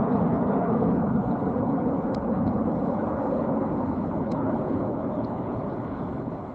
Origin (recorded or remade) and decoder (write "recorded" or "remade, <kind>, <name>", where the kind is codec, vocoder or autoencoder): remade, codec, HILCodec